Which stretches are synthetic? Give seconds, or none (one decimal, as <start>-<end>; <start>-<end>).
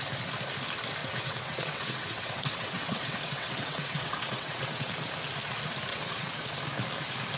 1.0-4.9; 5.9-6.4